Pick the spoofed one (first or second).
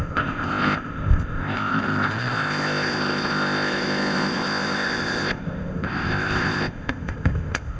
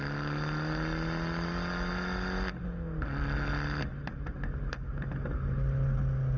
first